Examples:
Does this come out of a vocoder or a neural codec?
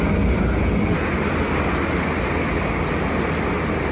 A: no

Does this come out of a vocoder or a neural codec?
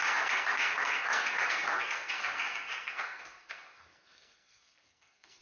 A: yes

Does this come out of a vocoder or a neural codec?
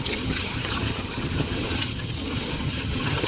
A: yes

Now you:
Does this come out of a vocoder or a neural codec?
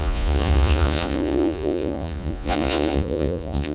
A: yes